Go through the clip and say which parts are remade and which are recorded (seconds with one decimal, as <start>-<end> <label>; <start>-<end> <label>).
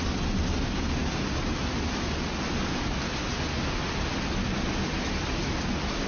0.0-6.1 recorded